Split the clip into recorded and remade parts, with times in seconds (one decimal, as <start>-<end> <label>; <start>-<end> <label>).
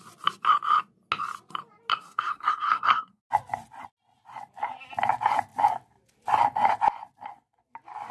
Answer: 0.0-1.9 recorded; 1.9-3.2 remade; 3.2-8.1 recorded